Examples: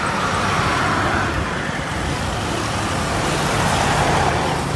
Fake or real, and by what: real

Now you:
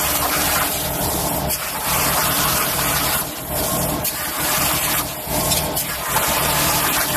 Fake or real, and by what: fake, vocoder, BigVGAN v2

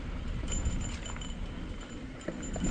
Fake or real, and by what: fake, vocoder, BigVGAN v2